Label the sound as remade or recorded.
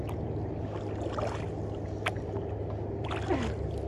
recorded